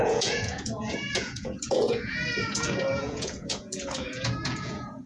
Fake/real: fake